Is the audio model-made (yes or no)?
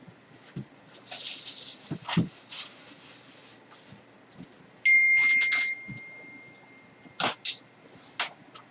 no